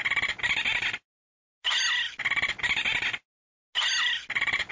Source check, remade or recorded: recorded